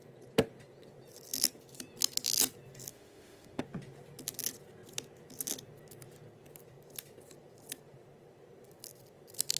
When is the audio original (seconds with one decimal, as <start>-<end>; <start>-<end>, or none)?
0.0-2.9; 3.6-9.6